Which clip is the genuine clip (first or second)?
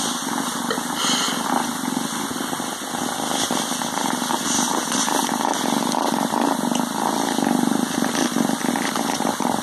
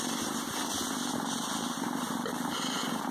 first